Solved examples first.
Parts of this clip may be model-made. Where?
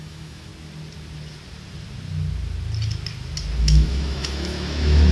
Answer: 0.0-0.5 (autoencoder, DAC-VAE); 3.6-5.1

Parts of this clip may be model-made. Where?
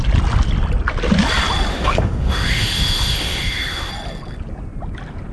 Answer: 1.7-3.9 (autoencoder, DAC-VAE)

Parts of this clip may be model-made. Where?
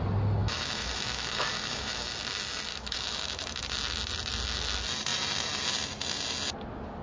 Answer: 0.4-2.1 (autoencoder, DAC-VAE); 2.7-3.6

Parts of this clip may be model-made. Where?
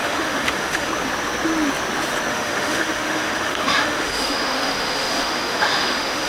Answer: 0.0-0.9 (autoencoder, DAC-VAE); 2.3-6.3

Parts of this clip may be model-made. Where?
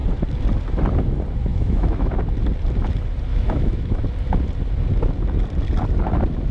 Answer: 1.5-2.1 (autoencoder, DAC-VAE); 3.3-4.0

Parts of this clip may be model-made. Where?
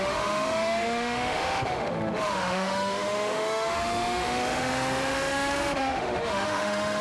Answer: 0.0-7.0 (autoencoder, DAC-VAE)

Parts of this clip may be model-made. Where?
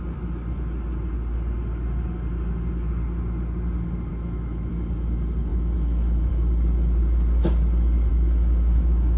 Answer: 4.1-4.7 (autoencoder, DAC-VAE); 5.5-6.3; 8.1-9.2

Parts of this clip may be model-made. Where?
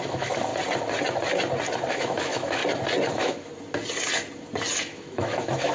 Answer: 0.0-0.5 (autoencoder, DAC-VAE); 1.9-2.6; 3.1-3.5; 4.8-5.7